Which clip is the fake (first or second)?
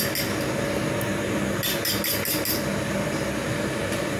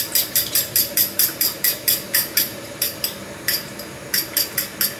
second